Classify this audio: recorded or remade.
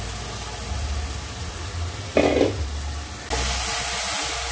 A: recorded